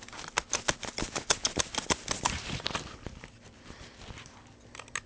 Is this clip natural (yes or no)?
yes